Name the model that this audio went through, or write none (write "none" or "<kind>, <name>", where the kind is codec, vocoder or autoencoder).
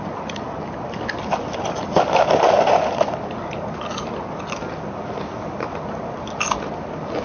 none